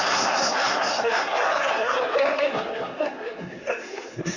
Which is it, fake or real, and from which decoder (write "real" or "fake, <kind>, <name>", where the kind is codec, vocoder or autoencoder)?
fake, codec, SNAC